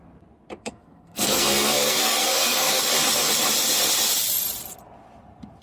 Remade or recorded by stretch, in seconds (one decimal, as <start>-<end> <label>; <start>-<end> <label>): 0.0-0.6 recorded; 0.6-2.8 remade; 2.8-5.6 recorded